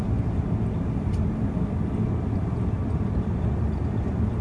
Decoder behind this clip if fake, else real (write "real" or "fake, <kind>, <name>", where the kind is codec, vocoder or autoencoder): real